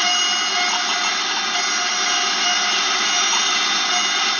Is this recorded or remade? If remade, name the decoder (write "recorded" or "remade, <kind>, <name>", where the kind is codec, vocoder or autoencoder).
recorded